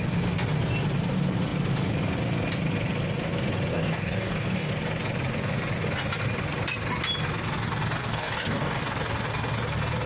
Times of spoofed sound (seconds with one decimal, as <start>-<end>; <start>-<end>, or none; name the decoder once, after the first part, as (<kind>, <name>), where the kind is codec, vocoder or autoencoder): 3.7-4.7 (codec, DAC); 8.0-8.8